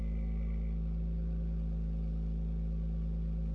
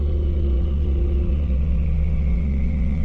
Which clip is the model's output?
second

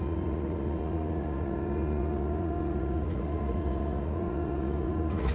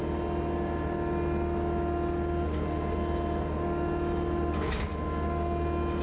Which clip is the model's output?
first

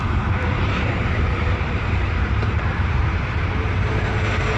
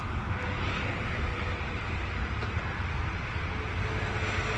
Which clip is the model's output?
first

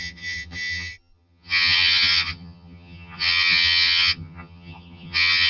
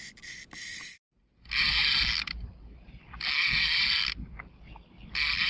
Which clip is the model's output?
first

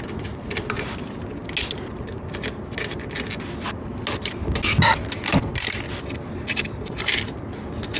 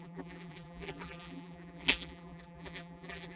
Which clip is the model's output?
second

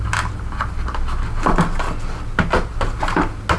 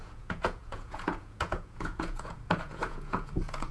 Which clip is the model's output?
second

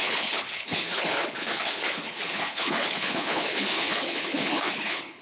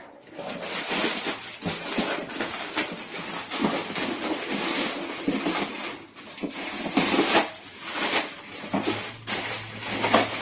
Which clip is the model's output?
first